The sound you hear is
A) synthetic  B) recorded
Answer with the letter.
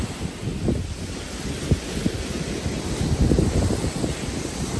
B